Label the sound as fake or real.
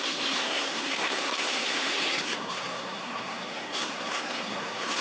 fake